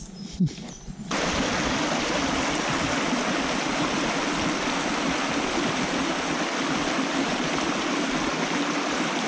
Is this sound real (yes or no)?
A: yes